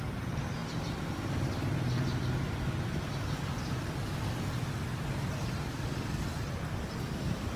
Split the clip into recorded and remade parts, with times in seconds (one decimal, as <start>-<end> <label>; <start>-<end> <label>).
0.0-7.6 recorded